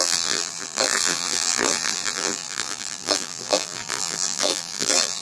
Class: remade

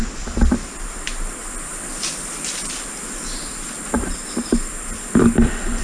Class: remade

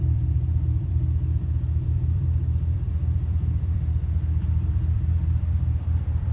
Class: remade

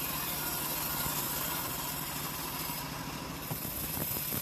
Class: remade